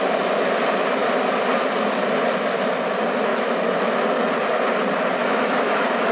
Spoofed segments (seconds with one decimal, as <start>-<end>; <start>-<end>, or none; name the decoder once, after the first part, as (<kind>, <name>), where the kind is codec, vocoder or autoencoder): 3.3-3.9 (autoencoder, DAC-VAE); 5.2-6.1